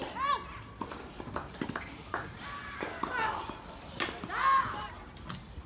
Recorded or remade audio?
recorded